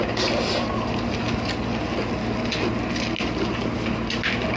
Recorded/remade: recorded